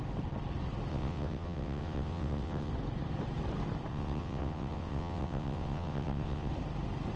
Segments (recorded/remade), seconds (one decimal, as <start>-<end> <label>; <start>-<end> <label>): 0.0-0.9 recorded; 0.9-2.7 remade; 2.7-3.9 recorded; 3.9-6.5 remade; 6.5-7.2 recorded